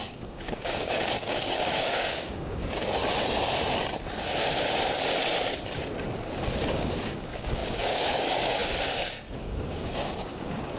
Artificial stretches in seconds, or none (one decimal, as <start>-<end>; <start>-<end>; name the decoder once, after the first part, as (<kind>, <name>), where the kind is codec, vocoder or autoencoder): 0.0-3.0 (codec, DAC); 6.5-10.8